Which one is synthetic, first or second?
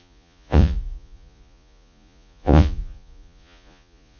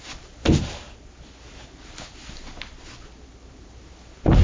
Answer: first